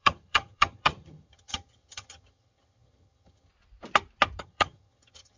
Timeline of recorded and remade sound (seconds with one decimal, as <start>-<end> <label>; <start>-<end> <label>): 0.0-3.5 remade; 3.5-4.4 recorded; 4.4-5.4 remade